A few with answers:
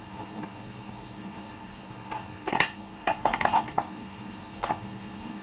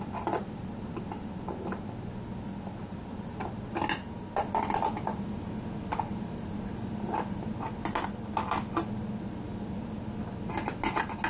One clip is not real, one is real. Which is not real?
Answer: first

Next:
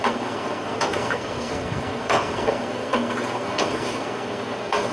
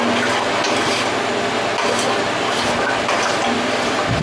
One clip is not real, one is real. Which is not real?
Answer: first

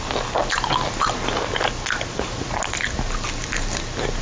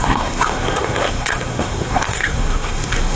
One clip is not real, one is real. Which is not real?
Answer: second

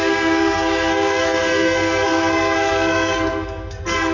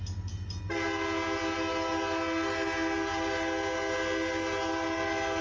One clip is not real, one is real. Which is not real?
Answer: first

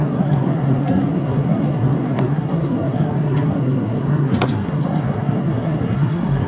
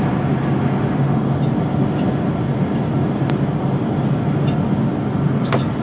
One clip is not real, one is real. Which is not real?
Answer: first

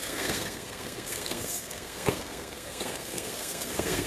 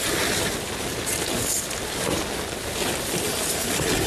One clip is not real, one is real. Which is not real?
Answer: first